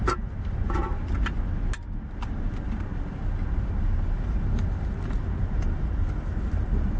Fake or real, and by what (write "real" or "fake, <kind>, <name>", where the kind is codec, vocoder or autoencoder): real